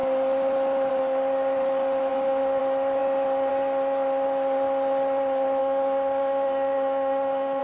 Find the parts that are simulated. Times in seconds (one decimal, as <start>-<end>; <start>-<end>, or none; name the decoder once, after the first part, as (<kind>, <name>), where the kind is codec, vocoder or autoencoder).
2.1-2.6 (codec, DAC); 5.6-7.6